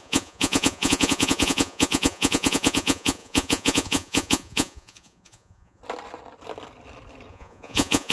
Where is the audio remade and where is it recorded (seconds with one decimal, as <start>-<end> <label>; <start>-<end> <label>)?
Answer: 0.0-5.8 remade; 5.8-7.3 recorded; 7.3-8.1 remade